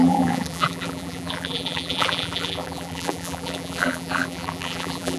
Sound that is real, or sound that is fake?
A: fake